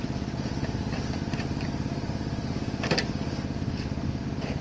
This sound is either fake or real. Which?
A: real